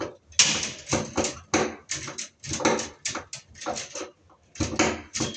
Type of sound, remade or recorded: recorded